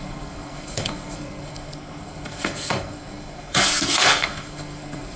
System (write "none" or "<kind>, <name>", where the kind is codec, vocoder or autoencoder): codec, SNAC